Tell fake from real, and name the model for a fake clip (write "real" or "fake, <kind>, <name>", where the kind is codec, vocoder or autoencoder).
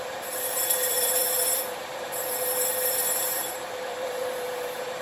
fake, vocoder, BigVGAN v2